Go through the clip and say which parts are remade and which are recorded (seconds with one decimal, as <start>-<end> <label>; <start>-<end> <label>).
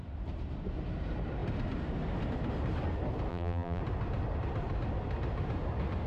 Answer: 0.0-3.3 recorded; 3.3-3.8 remade; 3.8-6.1 recorded